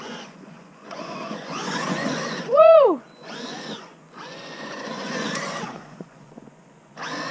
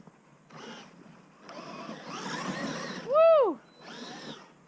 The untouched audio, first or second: second